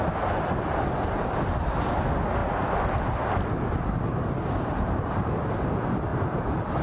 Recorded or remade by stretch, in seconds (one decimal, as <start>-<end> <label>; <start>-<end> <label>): 0.0-6.8 recorded